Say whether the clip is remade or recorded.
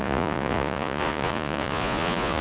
remade